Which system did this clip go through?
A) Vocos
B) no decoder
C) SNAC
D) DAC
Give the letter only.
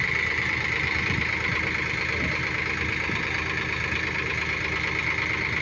B